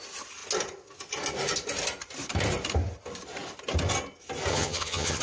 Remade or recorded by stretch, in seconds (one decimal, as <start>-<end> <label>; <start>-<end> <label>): 0.0-4.5 recorded; 4.5-5.2 remade